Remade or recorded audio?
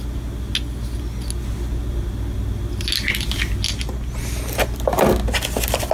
recorded